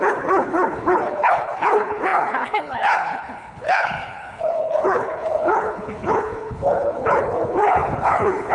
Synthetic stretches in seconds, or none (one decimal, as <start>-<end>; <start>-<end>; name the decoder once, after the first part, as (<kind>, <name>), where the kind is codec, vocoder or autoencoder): 0.0-8.5 (codec, HILCodec)